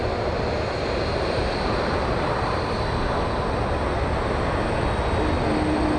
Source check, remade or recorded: recorded